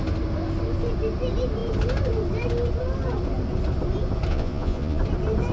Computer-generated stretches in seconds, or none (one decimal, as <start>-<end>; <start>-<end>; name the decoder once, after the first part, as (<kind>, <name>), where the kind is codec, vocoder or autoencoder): 4.3-5.0 (vocoder, Vocos)